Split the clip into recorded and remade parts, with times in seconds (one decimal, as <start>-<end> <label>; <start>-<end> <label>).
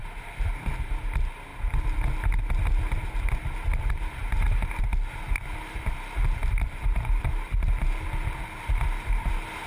0.0-6.4 recorded; 6.4-7.7 remade; 7.7-9.7 recorded